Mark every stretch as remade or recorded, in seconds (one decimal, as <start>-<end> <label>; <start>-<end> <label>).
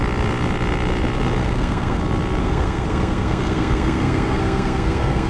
0.0-1.4 recorded; 1.4-2.0 remade; 2.0-2.4 recorded; 2.4-5.3 remade